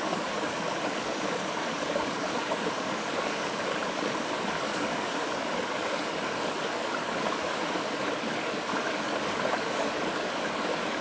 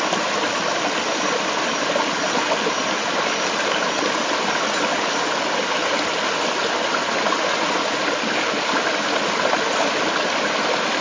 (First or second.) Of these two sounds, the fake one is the first